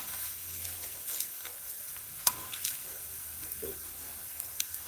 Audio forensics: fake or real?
fake